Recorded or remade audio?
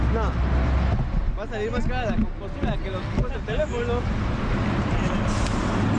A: recorded